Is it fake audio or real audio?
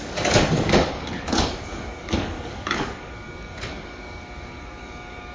fake